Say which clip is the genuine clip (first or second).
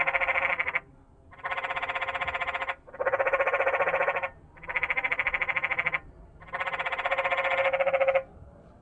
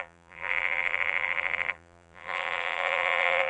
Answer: first